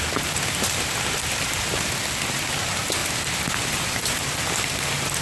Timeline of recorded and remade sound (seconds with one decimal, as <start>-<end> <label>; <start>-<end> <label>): 0.0-3.0 recorded; 3.0-4.2 remade; 4.2-5.2 recorded